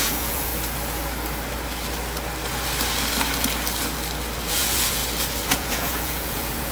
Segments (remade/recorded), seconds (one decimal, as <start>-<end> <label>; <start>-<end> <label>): 0.0-0.5 remade; 0.5-4.5 recorded; 4.5-5.0 remade; 5.0-5.5 recorded; 5.5-6.7 remade